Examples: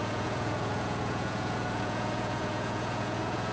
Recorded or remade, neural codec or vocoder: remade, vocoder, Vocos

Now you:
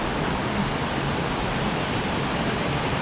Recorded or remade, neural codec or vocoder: recorded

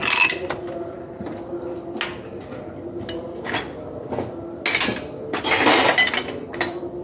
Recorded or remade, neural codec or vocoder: recorded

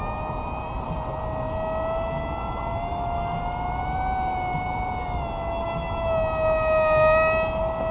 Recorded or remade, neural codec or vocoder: recorded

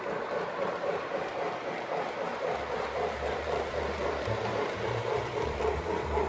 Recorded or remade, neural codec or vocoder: remade, vocoder, BigVGAN v2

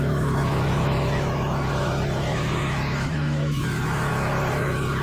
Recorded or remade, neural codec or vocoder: remade, autoencoder, DAC-VAE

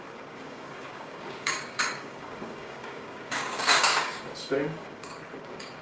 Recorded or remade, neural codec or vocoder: remade, codec, DAC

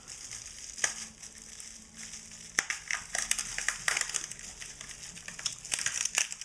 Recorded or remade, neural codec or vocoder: recorded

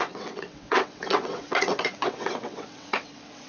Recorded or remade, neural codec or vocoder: remade, vocoder, WaveNeXt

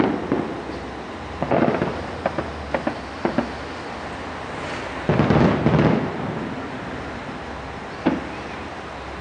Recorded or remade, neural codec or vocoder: recorded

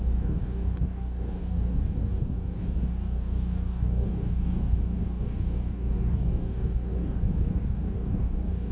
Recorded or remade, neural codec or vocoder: remade, codec, DAC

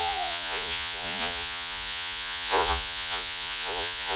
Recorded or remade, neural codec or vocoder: remade, vocoder, Vocos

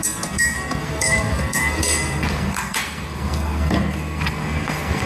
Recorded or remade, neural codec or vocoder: remade, codec, SNAC